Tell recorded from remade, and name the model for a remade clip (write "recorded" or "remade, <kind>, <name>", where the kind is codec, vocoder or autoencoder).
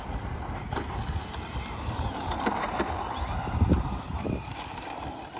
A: recorded